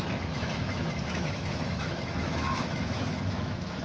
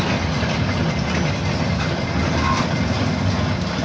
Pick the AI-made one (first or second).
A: first